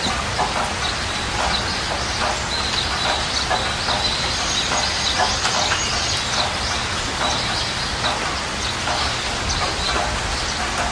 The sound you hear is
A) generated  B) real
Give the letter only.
B